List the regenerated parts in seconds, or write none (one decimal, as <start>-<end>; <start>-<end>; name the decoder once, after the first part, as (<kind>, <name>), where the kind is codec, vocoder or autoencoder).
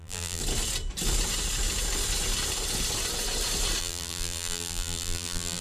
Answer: 0.0-0.4 (vocoder, BigVGAN v2); 3.8-5.6